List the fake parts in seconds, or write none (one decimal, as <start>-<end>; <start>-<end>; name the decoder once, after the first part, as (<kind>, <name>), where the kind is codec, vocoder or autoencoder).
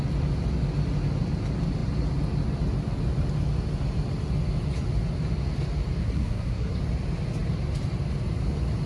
6.0-6.8 (codec, SNAC)